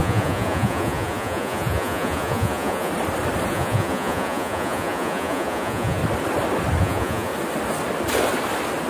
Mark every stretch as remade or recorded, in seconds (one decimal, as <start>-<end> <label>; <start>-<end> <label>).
0.0-2.9 remade; 2.9-3.5 recorded; 3.5-6.0 remade; 6.0-6.8 recorded; 6.8-7.3 remade; 7.3-8.9 recorded